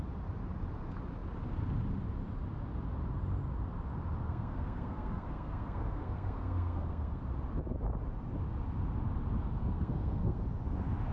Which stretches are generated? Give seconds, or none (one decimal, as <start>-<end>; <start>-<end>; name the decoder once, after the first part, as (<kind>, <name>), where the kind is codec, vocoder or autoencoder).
4.2-7.2 (codec, SNAC); 9.6-10.4